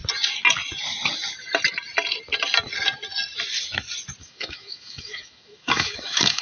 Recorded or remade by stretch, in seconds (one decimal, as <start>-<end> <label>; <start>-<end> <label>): 0.0-4.2 recorded; 4.2-6.4 remade